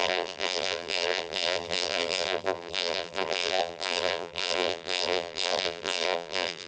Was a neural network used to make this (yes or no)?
yes